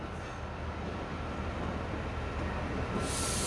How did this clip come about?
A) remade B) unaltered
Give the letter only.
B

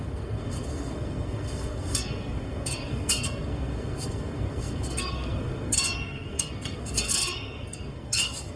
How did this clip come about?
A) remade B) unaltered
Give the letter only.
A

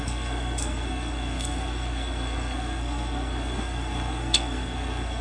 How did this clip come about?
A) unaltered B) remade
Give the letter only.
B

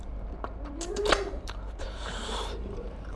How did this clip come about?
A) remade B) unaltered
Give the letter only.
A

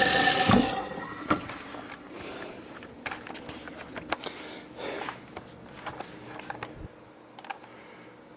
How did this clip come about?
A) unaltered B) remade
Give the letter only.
A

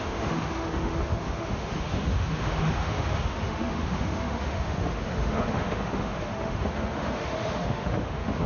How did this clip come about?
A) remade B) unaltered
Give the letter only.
A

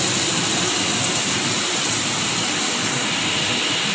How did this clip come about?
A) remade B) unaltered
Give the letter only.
B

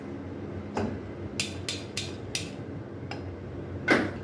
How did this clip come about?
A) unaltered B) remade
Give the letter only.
A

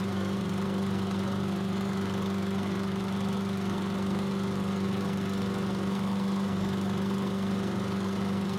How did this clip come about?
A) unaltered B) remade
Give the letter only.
B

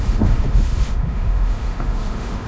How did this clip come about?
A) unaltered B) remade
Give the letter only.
B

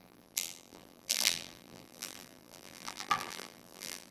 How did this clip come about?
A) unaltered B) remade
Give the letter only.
B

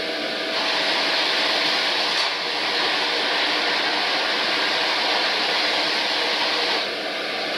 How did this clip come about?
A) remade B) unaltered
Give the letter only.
B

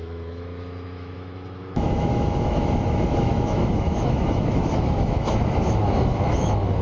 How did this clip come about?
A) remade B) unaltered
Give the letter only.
A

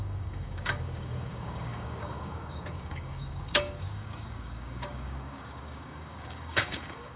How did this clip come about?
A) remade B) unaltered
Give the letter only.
A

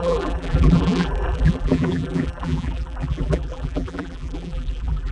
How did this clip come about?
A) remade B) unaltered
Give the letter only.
A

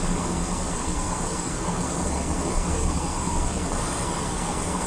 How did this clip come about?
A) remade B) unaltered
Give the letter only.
A